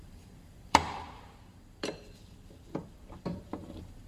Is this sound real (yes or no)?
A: no